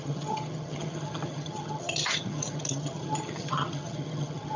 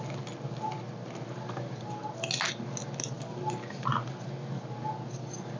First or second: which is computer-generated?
first